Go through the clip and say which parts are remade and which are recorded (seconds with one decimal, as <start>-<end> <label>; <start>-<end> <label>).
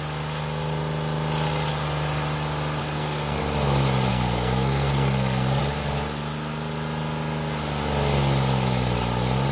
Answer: 0.0-2.8 recorded; 2.8-3.4 remade; 3.4-4.1 recorded; 4.1-5.6 remade; 5.6-9.5 recorded